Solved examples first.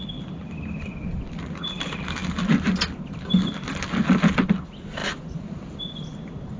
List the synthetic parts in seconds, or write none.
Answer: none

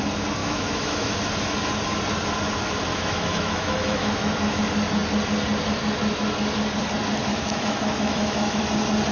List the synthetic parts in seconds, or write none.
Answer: 0.4-1.1 (autoencoder, DAC-VAE); 2.9-4.6; 7.3-8.6